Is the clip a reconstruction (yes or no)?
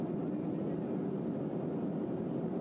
no